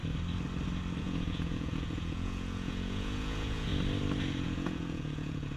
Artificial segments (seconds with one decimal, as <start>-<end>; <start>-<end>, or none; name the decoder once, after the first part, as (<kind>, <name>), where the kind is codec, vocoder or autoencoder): 1.0-3.7 (vocoder, Vocos); 4.2-5.6